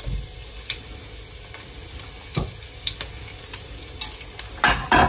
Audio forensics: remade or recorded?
recorded